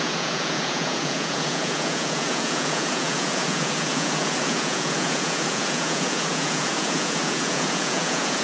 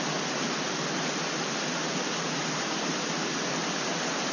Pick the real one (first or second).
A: second